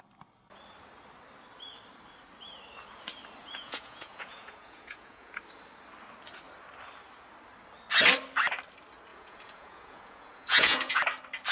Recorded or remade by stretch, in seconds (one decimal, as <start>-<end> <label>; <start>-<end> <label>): 0.0-3.4 recorded; 3.4-5.4 remade; 5.4-9.1 recorded; 9.1-11.0 remade; 11.0-11.5 recorded